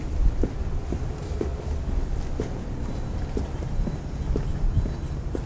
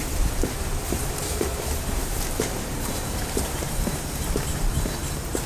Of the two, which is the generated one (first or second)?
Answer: second